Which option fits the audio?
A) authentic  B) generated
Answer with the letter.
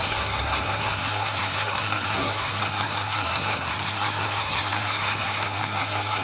B